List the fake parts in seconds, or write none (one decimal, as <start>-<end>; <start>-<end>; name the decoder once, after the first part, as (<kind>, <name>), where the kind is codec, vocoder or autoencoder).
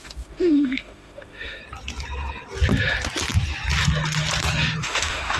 0.0-1.6 (autoencoder, DAC-VAE); 4.8-5.4